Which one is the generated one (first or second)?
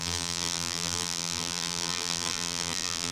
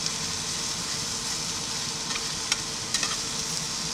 first